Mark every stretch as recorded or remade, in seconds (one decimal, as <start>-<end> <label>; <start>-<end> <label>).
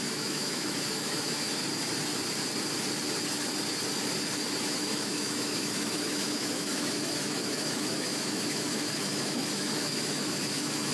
0.0-1.6 remade; 1.6-4.6 recorded; 4.6-10.9 remade